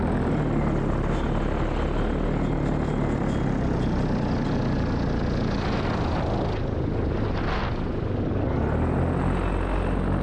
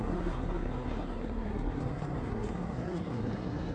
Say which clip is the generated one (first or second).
second